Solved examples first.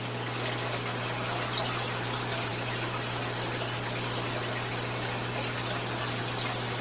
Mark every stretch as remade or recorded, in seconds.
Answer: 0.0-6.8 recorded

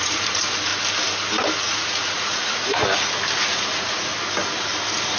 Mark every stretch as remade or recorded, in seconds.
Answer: 0.0-0.7 remade; 0.7-1.6 recorded; 1.6-2.8 remade; 2.8-3.5 recorded; 3.5-4.1 remade; 4.1-5.2 recorded

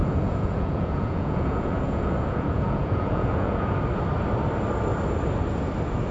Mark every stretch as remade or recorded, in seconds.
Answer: 0.0-3.7 remade; 3.7-6.1 recorded

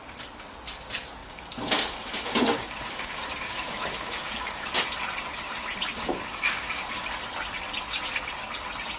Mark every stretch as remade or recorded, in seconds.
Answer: 0.0-1.2 recorded; 1.2-4.7 remade; 4.7-5.9 recorded; 5.9-7.0 remade; 7.0-9.0 recorded

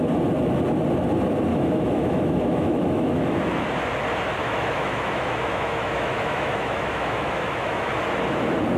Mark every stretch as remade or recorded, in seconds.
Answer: 0.0-1.5 recorded; 1.5-3.8 remade; 3.8-4.4 recorded; 4.4-7.9 remade; 7.9-8.8 recorded

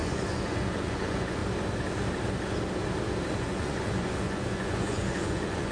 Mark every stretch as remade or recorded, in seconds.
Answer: 0.0-1.4 remade; 1.4-3.4 recorded; 3.4-5.7 remade

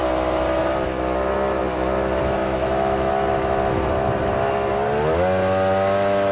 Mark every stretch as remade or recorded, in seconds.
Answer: 0.0-2.4 recorded; 2.4-3.1 remade; 3.1-6.3 recorded

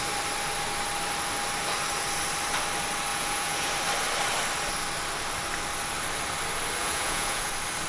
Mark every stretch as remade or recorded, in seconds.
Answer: 0.0-3.1 recorded; 3.1-3.7 remade; 3.7-6.8 recorded; 6.8-7.5 remade; 7.5-7.9 recorded